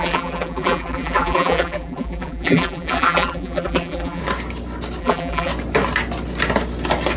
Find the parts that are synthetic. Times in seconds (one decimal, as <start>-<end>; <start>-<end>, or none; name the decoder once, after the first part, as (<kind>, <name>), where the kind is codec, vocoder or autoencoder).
0.0-4.2 (vocoder, BigVGAN v2); 5.0-5.5

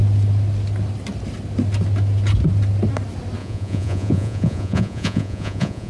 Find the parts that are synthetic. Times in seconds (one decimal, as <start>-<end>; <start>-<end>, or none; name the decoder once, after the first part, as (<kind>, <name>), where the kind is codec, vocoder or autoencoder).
3.4-5.9 (vocoder, Vocos)

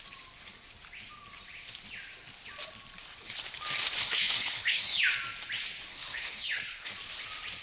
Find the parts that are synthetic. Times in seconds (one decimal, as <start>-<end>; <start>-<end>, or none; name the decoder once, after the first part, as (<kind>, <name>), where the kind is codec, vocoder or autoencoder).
4.0-5.0 (codec, HILCodec); 5.9-6.9

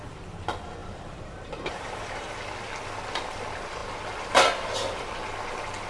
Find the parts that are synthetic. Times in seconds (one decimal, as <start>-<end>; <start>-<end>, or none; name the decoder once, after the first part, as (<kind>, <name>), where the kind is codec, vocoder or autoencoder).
0.8-2.3 (vocoder, BigVGAN v2)

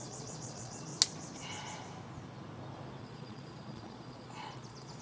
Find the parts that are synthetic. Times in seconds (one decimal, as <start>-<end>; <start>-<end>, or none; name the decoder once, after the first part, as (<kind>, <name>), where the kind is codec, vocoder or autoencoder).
0.0-0.9 (vocoder, Vocos); 3.0-5.0

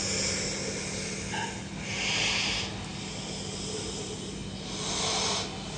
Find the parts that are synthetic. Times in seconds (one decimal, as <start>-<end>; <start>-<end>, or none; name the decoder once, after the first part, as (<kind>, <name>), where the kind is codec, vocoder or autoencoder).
none

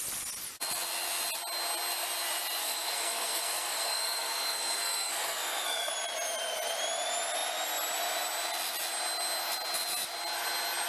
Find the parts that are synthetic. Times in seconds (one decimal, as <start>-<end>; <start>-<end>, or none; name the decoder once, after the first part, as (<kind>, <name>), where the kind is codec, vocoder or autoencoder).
2.6-5.9 (codec, SNAC)

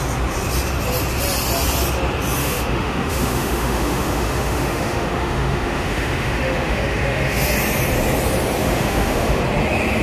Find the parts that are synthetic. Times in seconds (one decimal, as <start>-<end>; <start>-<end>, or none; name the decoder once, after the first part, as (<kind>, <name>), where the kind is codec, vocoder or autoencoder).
2.4-7.5 (autoencoder, DAC-VAE); 8.6-9.4